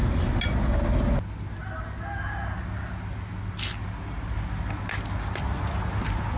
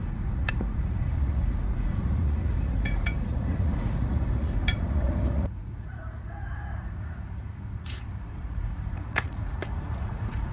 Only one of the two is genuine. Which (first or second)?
first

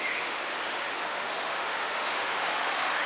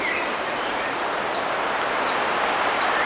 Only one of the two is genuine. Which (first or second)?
second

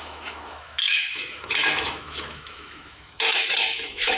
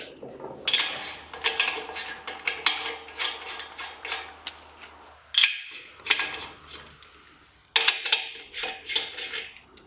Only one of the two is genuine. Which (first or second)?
second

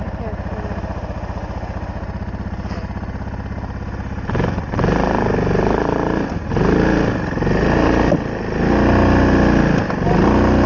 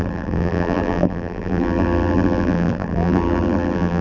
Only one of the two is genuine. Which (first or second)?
first